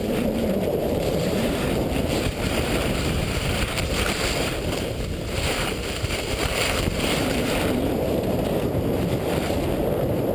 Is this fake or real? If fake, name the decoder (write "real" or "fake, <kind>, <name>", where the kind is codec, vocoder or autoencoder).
fake, vocoder, BigVGAN v2